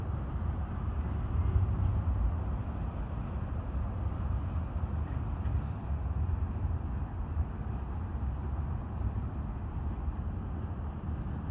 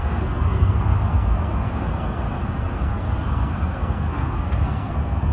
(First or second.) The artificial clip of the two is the second